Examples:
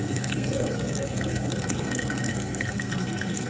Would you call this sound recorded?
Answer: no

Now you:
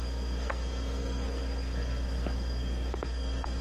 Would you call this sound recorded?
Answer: no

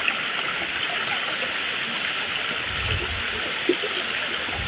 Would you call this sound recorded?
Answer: yes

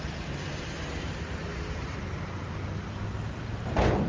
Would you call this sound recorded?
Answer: yes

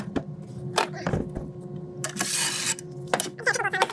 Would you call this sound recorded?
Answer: yes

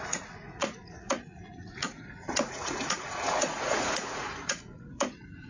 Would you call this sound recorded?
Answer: no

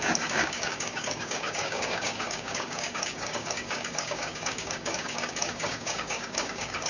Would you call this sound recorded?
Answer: no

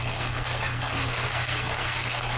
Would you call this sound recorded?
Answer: no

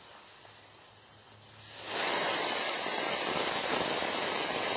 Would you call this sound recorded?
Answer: yes